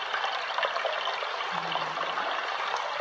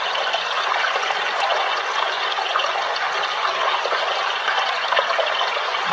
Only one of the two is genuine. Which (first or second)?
first